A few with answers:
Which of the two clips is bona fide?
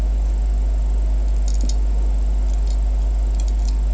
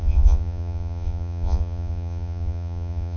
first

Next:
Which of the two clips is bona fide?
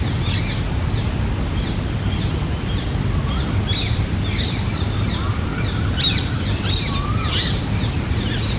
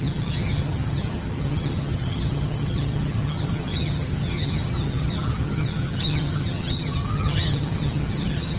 first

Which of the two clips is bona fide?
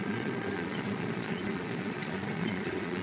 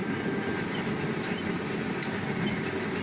second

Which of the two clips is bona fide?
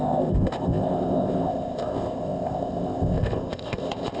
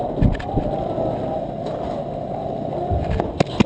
second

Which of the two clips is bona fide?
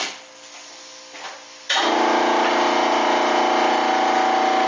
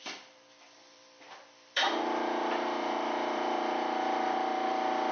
first